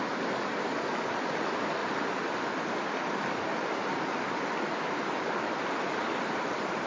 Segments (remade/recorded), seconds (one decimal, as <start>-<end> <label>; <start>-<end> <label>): 0.0-6.9 recorded